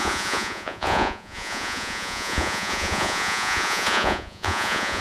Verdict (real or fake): fake